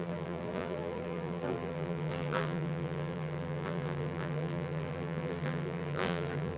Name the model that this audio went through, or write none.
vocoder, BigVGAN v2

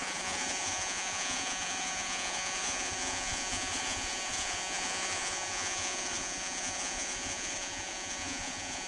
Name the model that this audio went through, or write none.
vocoder, Vocos